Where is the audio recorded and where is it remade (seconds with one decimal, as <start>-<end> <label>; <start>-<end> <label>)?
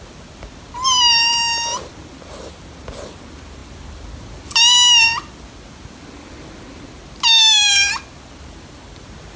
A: 0.0-9.4 recorded